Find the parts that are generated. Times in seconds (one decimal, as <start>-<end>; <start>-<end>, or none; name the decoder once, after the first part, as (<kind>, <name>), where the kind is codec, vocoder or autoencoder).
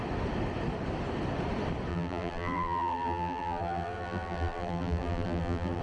1.9-5.8 (vocoder, BigVGAN v2)